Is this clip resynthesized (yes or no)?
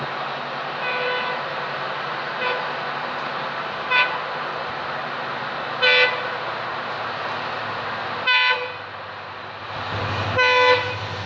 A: no